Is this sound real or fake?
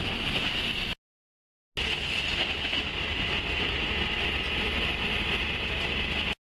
real